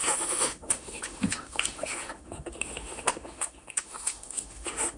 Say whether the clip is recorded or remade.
remade